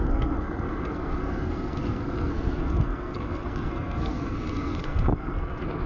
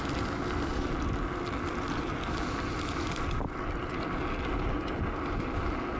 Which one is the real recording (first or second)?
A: second